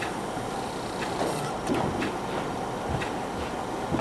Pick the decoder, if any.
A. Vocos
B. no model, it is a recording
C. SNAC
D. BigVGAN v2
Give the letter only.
B